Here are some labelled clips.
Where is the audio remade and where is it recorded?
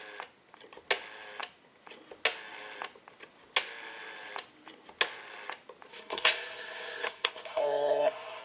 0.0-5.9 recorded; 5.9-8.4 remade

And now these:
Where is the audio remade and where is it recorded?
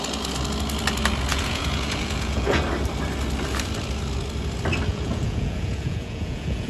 0.0-1.3 recorded; 1.3-2.6 remade; 2.6-4.9 recorded; 4.9-6.7 remade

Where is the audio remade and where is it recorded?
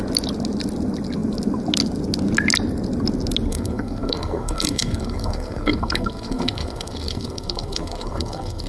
0.0-3.5 recorded; 3.5-8.7 remade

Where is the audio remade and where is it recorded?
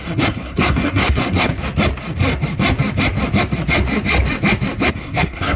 0.0-1.5 remade; 1.5-4.9 recorded; 4.9-5.6 remade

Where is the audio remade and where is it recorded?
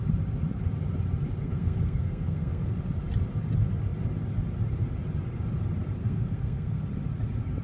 0.0-1.4 recorded; 1.4-2.7 remade; 2.7-6.0 recorded; 6.0-6.8 remade; 6.8-7.6 recorded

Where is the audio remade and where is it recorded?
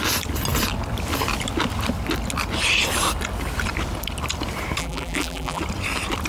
0.0-4.8 recorded; 4.8-5.6 remade; 5.6-6.3 recorded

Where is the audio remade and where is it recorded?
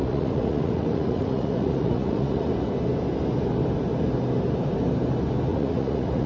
0.0-2.5 remade; 2.5-5.5 recorded; 5.5-6.3 remade